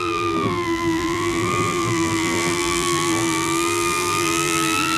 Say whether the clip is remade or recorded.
remade